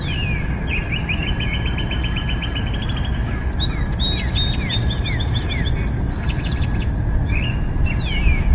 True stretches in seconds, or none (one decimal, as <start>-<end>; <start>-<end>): 0.0-8.5